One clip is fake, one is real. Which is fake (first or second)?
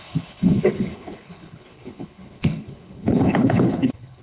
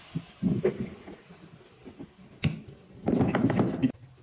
first